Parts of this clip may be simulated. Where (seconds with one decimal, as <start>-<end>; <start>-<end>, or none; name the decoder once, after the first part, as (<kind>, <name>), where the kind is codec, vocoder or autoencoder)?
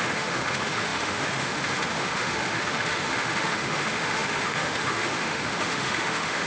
0.0-6.5 (autoencoder, DAC-VAE)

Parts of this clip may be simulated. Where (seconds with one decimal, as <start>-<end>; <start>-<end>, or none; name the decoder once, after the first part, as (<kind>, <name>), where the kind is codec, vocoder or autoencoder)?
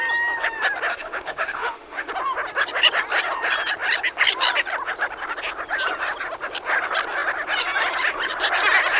0.9-2.1 (autoencoder, DAC-VAE)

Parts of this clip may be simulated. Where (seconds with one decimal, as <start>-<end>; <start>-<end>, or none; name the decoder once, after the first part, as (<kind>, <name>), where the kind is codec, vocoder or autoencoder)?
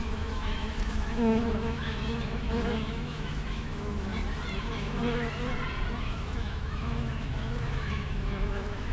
0.0-4.1 (autoencoder, DAC-VAE); 4.6-5.0; 6.0-8.9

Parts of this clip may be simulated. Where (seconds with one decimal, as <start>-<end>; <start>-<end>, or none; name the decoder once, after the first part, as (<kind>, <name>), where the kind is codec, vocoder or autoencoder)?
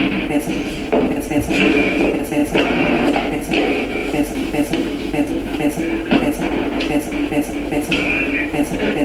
0.0-0.8 (autoencoder, DAC-VAE); 1.7-9.0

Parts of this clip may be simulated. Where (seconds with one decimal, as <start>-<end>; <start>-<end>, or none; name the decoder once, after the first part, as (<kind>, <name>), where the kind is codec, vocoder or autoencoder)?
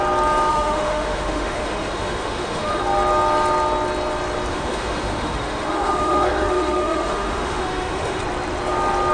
0.5-2.8 (autoencoder, DAC-VAE); 4.5-8.2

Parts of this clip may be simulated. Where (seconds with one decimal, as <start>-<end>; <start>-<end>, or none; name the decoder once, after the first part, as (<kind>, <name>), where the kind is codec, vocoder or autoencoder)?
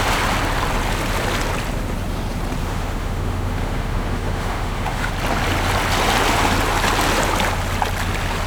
2.6-5.1 (autoencoder, DAC-VAE)